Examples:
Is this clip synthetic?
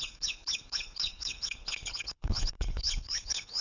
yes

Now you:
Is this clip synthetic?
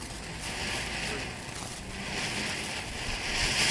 no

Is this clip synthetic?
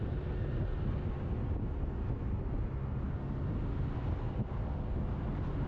no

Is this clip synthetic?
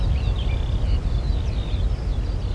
no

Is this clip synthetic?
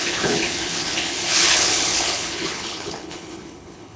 yes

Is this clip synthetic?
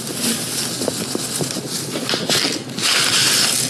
no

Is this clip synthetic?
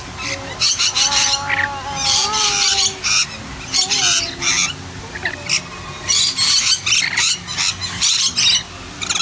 no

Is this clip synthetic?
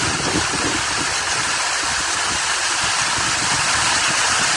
no